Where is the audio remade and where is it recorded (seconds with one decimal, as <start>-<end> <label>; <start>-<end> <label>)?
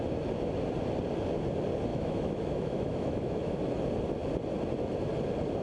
0.0-1.9 recorded; 1.9-3.7 remade; 3.7-5.6 recorded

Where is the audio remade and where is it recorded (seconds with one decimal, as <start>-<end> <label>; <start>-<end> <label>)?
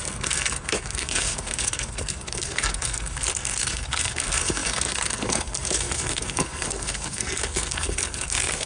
0.0-8.7 remade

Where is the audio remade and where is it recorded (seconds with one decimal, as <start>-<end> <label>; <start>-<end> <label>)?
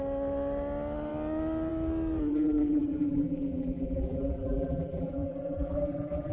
0.0-2.3 recorded; 2.3-6.3 remade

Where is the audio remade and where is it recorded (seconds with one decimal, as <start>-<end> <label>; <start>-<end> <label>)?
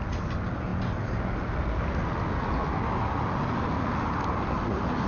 0.0-5.1 recorded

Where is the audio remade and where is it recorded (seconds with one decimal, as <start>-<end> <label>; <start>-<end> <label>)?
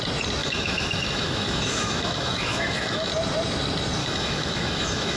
0.0-0.4 recorded; 0.4-3.1 remade; 3.1-4.0 recorded; 4.0-5.2 remade